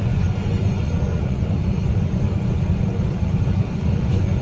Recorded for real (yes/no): no